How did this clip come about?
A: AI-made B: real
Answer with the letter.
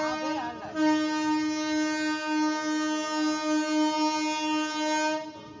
B